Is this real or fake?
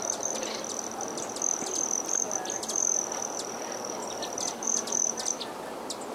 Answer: real